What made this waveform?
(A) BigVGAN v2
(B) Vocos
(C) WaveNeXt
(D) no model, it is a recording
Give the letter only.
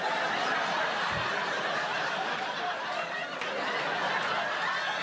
D